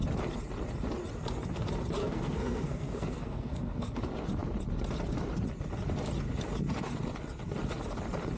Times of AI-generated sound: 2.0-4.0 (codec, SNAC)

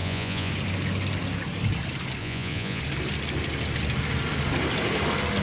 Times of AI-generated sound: 0.0-0.5 (vocoder, Vocos); 2.2-2.8

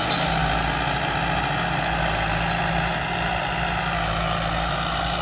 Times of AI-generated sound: none